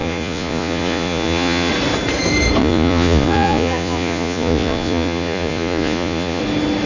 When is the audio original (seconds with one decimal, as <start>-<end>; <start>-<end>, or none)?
1.7-2.6; 6.4-6.9